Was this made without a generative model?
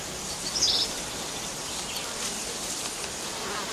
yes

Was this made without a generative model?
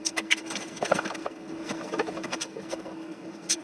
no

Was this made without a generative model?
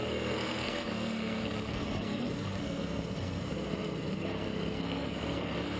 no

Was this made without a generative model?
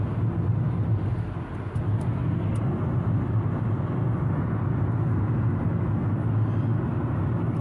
yes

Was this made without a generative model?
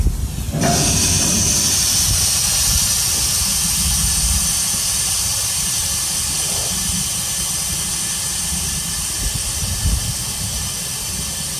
yes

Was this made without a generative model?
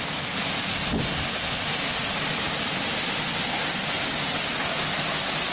yes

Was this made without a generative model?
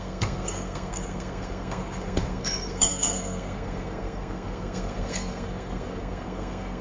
no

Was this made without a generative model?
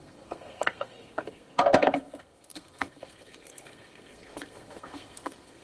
no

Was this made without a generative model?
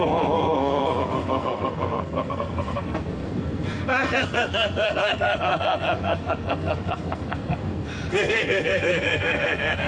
no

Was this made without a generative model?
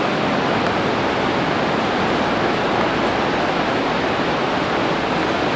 yes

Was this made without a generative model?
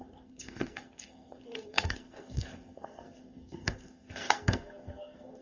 no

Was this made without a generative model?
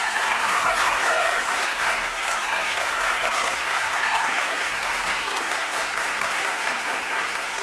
no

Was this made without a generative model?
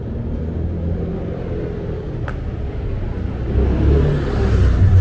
yes